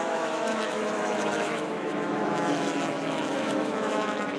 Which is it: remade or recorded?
remade